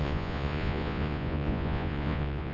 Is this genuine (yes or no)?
no